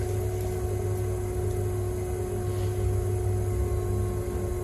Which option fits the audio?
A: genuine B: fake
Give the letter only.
A